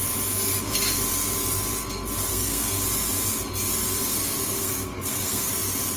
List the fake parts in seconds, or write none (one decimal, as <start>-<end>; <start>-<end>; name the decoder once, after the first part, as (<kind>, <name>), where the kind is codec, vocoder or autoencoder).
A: 2.3-2.8 (codec, SNAC); 4.1-5.5